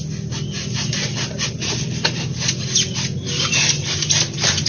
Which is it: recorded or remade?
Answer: recorded